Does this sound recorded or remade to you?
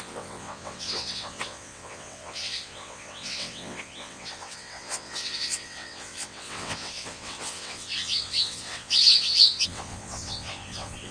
remade